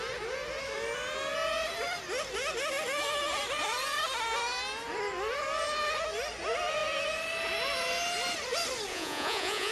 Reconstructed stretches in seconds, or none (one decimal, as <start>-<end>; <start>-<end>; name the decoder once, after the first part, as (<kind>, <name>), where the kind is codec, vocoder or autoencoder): 8.9-9.7 (vocoder, Vocos)